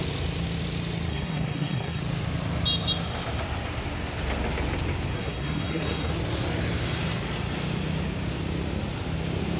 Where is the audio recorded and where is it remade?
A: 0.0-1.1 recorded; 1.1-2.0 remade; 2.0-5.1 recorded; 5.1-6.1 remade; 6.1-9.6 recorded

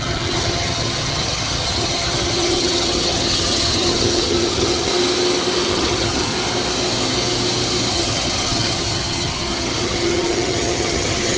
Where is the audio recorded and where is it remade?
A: 0.0-4.9 remade; 4.9-5.7 recorded; 5.7-6.3 remade; 6.3-7.9 recorded; 7.9-11.4 remade